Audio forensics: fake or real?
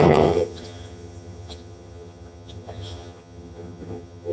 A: fake